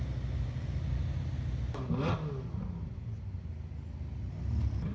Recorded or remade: recorded